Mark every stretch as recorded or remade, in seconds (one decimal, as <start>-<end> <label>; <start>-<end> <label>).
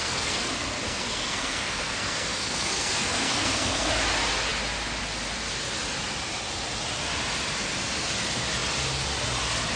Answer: 0.0-3.9 remade; 3.9-9.8 recorded